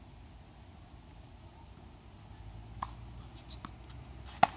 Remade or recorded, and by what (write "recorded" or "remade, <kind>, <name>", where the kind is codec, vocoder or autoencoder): recorded